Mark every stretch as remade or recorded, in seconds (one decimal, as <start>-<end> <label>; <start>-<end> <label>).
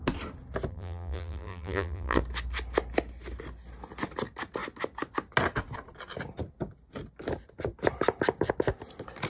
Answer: 0.0-0.7 recorded; 0.7-2.2 remade; 2.2-9.3 recorded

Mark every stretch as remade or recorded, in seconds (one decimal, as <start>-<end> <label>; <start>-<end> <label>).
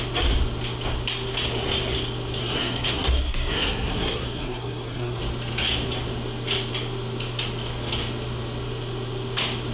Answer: 0.0-2.4 recorded; 2.4-5.2 remade; 5.2-9.7 recorded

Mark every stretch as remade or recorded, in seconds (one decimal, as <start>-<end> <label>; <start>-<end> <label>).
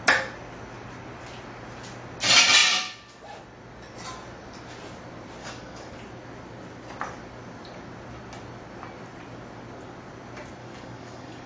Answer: 0.0-5.4 recorded; 5.4-5.9 remade; 5.9-10.6 recorded; 10.6-11.5 remade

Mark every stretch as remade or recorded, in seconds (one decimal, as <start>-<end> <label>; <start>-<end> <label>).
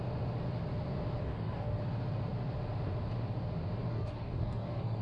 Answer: 0.0-1.2 recorded; 1.2-1.8 remade; 1.8-3.9 recorded; 3.9-5.0 remade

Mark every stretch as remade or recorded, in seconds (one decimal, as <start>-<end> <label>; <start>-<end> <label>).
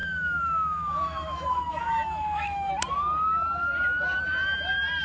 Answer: 0.0-2.7 remade; 2.7-5.0 recorded